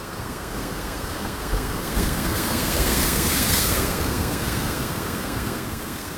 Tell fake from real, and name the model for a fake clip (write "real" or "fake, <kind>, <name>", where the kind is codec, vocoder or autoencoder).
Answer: fake, codec, SNAC